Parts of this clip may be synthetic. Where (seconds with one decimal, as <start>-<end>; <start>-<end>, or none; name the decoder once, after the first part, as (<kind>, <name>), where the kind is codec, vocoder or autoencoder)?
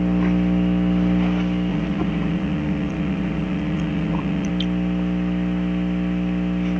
1.7-4.5 (vocoder, Vocos)